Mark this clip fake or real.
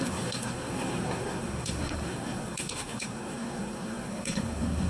fake